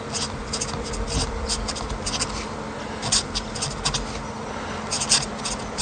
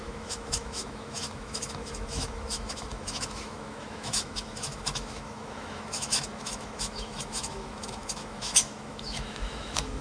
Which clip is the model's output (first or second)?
second